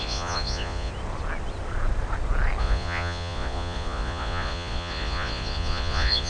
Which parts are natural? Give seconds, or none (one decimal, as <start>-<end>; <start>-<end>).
0.9-2.6